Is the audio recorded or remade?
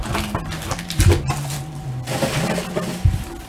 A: recorded